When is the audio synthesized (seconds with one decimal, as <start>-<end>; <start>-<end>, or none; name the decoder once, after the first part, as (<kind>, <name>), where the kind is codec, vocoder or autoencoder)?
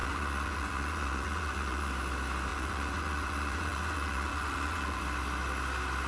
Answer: 0.0-1.9 (vocoder, Vocos); 2.5-5.0